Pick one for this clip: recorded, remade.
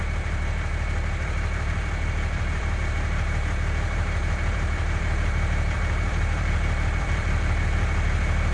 remade